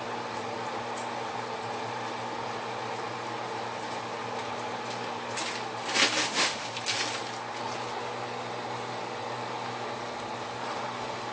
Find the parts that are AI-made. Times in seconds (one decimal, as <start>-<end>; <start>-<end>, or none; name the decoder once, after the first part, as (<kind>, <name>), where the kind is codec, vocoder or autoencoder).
6.2-6.7 (autoencoder, DAC-VAE)